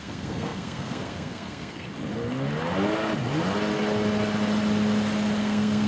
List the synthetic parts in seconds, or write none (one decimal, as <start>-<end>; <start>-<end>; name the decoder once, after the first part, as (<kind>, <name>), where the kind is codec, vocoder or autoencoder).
0.0-1.9 (codec, SNAC); 5.4-5.9